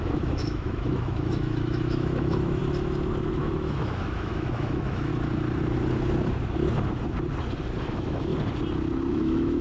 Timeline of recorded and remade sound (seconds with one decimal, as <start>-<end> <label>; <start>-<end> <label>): 0.0-2.6 remade; 2.6-3.3 recorded; 3.3-5.1 remade; 5.1-7.8 recorded; 7.8-8.3 remade; 8.3-9.1 recorded; 9.1-9.6 remade